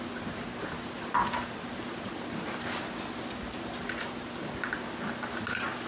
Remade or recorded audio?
recorded